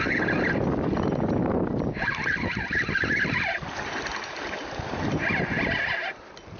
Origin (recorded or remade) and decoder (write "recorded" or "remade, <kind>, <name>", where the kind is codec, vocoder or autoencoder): recorded